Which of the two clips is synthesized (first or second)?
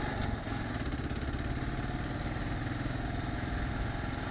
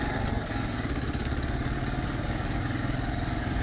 second